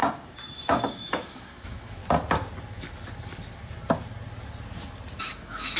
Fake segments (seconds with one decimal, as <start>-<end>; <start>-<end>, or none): 0.9-2.0; 5.2-5.8